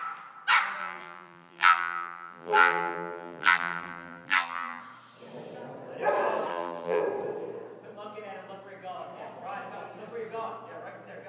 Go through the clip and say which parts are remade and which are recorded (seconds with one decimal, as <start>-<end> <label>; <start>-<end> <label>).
0.0-0.8 recorded; 0.8-4.8 remade; 4.8-6.5 recorded; 6.5-7.0 remade; 7.0-11.3 recorded